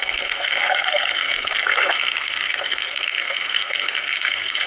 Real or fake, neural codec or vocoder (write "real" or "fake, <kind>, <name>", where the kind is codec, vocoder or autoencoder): fake, codec, SNAC